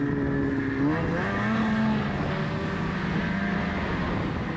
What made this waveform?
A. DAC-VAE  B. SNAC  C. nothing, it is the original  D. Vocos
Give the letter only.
C